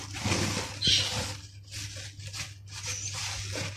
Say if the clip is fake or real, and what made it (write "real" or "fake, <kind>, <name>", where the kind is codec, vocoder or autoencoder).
real